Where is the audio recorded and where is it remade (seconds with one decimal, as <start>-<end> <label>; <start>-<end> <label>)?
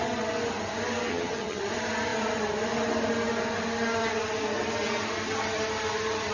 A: 0.0-1.1 recorded; 1.1-1.6 remade; 1.6-6.3 recorded